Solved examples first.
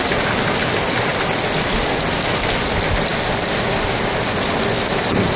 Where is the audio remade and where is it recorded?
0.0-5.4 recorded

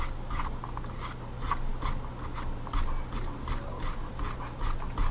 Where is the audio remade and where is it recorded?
0.0-5.1 recorded

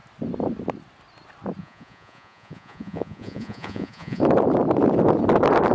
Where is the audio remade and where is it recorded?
0.0-1.6 recorded; 1.6-4.2 remade; 4.2-5.7 recorded

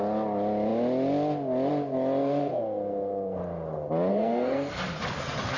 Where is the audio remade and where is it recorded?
0.0-2.2 recorded; 2.2-3.4 remade; 3.4-4.1 recorded; 4.1-4.7 remade; 4.7-5.6 recorded

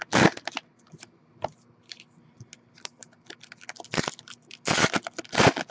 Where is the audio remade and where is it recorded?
0.0-5.7 recorded

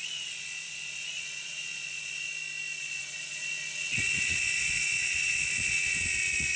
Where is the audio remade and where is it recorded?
0.0-2.3 remade; 2.3-2.8 recorded; 2.8-6.6 remade